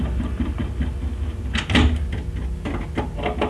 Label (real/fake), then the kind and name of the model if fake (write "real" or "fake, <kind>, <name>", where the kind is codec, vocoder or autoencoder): real